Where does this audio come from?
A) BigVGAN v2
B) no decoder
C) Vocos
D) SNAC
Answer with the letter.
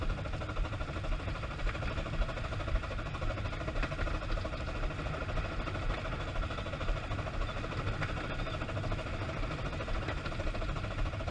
B